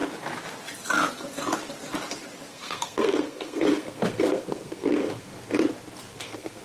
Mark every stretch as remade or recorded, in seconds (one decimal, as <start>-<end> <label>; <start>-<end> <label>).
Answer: 0.0-2.5 recorded; 2.5-5.3 remade; 5.3-6.1 recorded; 6.1-6.6 remade